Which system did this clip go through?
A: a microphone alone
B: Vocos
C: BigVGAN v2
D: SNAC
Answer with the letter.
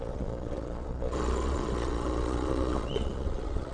B